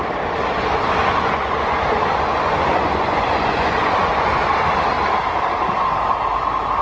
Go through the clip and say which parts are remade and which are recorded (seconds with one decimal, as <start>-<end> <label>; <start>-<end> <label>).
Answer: 0.0-1.0 recorded; 1.0-4.5 remade; 4.5-6.8 recorded